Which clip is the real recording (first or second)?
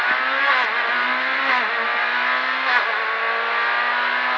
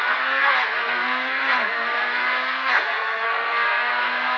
first